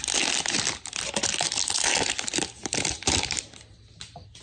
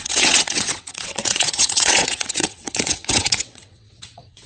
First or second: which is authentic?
first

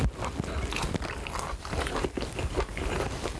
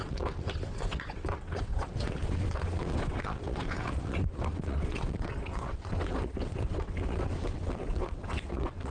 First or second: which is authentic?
first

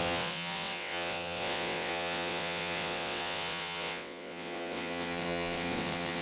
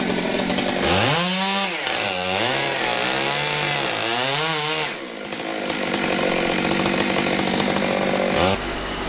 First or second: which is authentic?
second